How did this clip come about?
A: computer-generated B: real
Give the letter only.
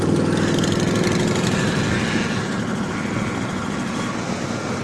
B